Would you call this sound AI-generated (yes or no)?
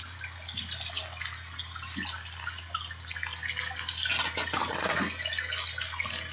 no